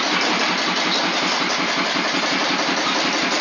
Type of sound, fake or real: real